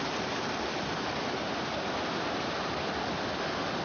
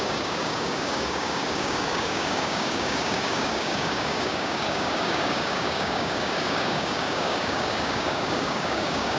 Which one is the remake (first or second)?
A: second